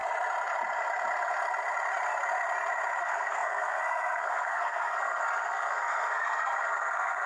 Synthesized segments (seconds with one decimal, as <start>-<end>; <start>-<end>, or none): 3.0-7.3